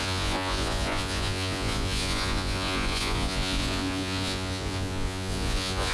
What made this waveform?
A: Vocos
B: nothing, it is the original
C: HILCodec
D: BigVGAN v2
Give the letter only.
A